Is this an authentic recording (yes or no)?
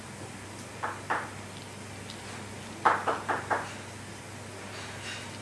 yes